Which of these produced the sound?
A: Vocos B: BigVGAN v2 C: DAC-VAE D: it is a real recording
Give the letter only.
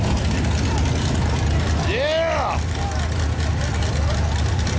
D